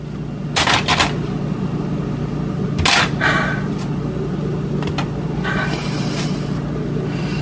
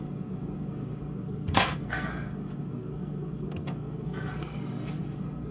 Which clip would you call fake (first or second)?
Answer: second